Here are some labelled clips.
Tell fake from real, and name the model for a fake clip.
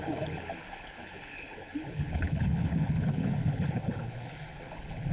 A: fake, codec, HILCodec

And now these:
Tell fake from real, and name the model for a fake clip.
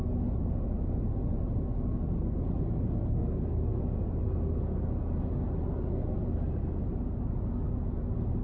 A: real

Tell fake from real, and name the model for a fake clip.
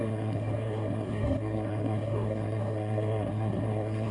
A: fake, codec, SNAC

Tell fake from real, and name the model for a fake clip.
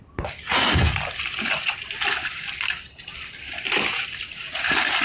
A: real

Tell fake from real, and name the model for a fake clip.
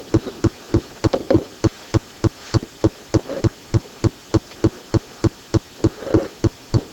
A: real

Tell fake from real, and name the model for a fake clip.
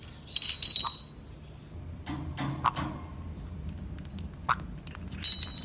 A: real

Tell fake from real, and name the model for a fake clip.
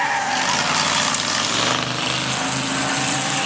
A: real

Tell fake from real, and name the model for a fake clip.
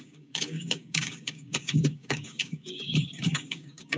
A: fake, codec, DAC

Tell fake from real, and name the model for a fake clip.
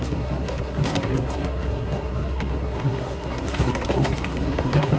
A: fake, codec, SNAC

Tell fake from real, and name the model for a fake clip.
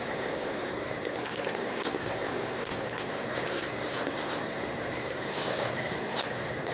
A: fake, codec, SNAC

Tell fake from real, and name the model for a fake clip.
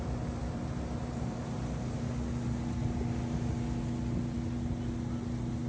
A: real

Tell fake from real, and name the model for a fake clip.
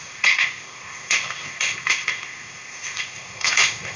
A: fake, codec, ZipCodec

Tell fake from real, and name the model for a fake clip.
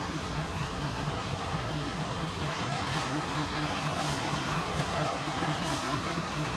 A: fake, codec, SNAC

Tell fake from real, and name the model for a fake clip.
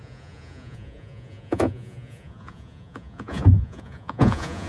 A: fake, vocoder, Vocos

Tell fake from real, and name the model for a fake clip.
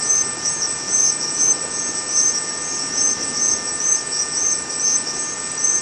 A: fake, vocoder, BigVGAN v2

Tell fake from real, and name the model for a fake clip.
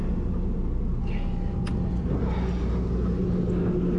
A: real